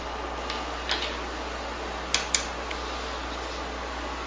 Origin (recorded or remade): recorded